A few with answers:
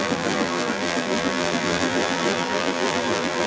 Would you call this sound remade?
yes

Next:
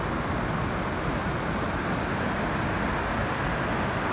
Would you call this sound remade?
no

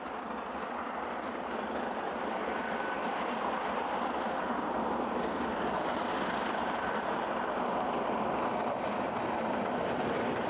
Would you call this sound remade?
yes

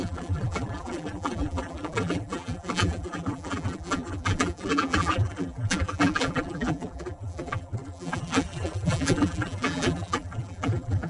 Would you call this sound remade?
yes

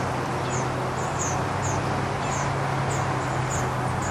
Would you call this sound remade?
no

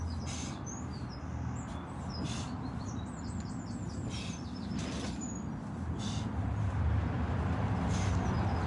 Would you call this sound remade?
no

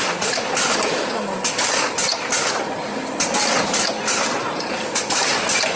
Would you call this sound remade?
yes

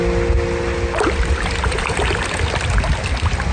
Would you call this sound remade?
no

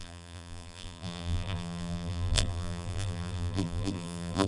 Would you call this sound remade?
yes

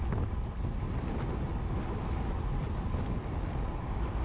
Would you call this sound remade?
no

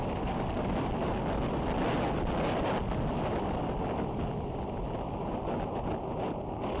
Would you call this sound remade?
no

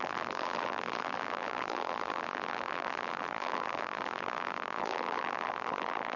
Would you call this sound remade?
yes